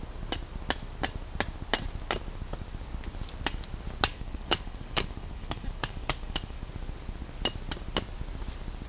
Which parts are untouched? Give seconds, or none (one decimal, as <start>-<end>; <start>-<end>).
0.0-4.1; 6.7-8.9